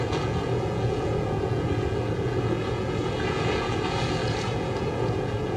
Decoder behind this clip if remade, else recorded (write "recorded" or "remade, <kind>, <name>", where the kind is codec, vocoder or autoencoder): remade, vocoder, Vocos